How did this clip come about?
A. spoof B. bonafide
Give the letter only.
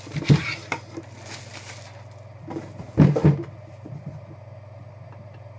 B